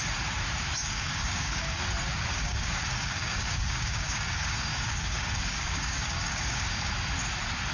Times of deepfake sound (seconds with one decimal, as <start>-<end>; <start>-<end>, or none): 0.8-1.8; 2.3-6.9

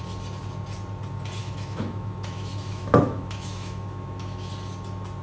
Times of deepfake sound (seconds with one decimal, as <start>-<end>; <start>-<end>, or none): 1.4-4.5

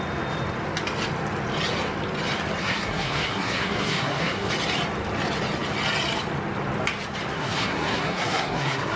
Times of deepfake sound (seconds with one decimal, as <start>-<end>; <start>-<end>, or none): 2.6-4.5; 7.3-9.0

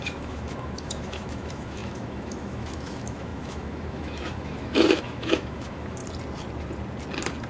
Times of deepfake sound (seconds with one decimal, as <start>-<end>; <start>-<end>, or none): 0.0-6.0

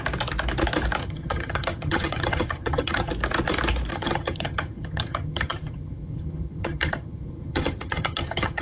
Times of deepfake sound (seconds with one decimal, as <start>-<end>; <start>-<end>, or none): 1.0-3.1; 3.9-8.6